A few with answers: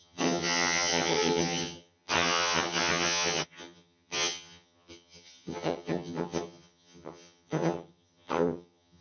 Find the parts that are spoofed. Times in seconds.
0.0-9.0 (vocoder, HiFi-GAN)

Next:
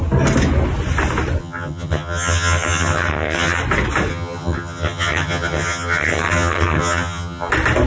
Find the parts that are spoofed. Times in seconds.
1.4-3.6 (vocoder, HiFi-GAN); 4.1-7.5

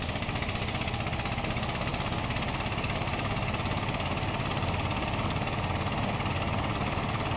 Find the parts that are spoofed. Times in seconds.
none

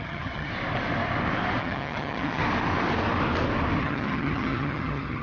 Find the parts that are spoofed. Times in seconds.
0.0-0.5 (vocoder, HiFi-GAN); 1.6-2.4; 3.8-5.2

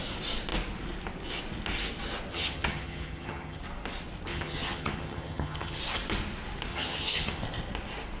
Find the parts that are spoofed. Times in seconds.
2.3-3.6 (vocoder, HiFi-GAN); 4.3-5.8; 6.7-7.4

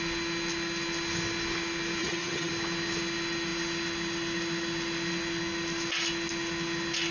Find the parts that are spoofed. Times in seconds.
2.0-2.5 (vocoder, HiFi-GAN)